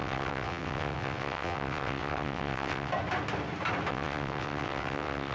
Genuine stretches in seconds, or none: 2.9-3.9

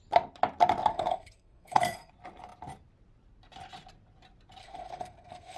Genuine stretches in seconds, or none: 0.0-0.9; 2.1-4.6